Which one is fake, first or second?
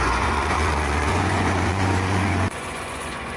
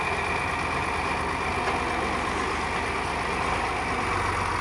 first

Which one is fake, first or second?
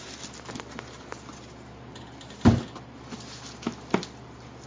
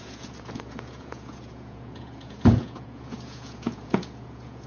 second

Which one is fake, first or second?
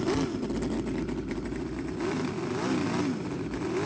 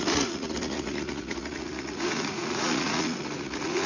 second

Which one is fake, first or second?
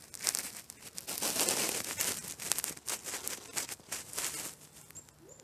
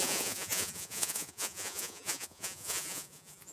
second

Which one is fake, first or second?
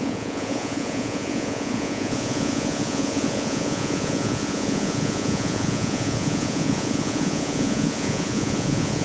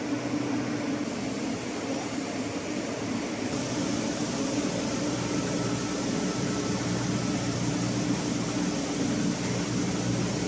first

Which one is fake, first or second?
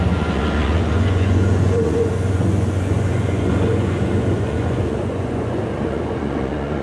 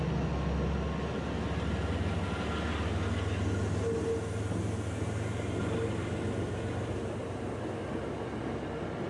first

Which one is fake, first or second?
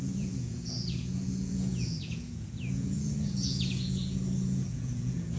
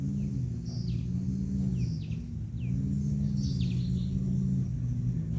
first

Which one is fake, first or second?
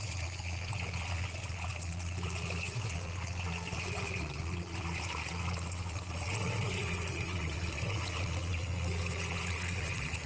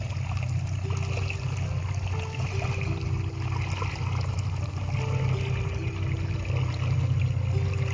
first